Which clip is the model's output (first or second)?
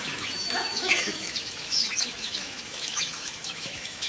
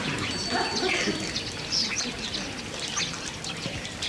first